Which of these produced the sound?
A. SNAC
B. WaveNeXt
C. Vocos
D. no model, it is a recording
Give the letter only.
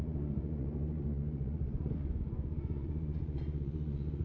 C